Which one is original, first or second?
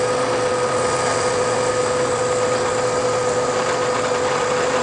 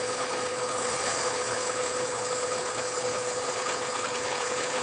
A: first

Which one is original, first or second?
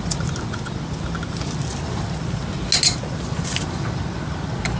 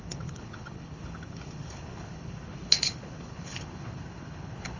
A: first